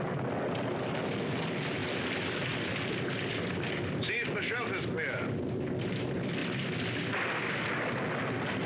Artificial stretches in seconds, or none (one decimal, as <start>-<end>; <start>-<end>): none